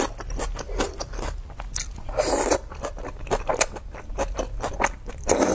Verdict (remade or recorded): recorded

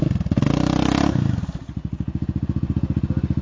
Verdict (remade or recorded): recorded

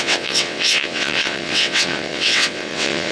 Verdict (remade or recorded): remade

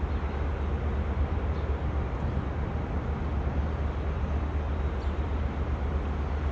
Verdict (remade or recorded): recorded